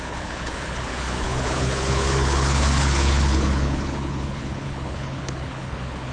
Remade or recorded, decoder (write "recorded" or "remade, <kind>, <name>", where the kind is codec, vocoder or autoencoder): remade, codec, HILCodec